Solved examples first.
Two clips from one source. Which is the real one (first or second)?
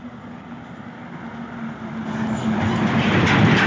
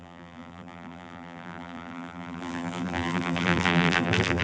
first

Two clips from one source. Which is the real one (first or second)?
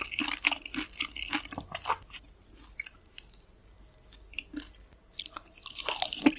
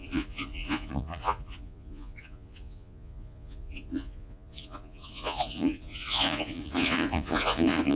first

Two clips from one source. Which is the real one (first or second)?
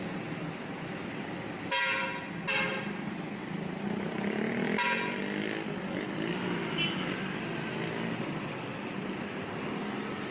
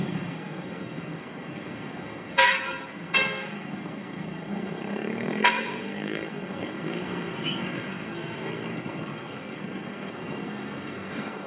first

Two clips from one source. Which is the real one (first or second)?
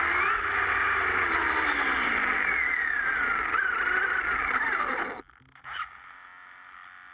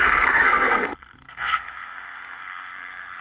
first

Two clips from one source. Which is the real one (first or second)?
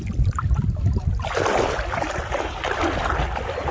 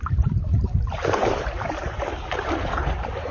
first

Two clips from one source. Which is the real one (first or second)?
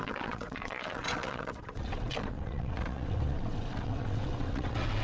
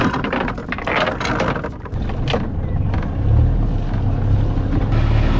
second